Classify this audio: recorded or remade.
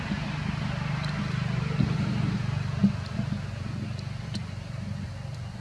recorded